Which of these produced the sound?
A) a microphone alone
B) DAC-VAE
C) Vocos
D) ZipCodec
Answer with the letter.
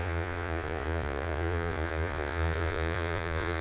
C